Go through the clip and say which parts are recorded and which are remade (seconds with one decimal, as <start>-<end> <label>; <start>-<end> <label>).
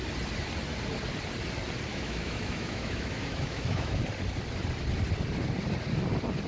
0.0-1.9 recorded; 1.9-4.0 remade; 4.0-6.5 recorded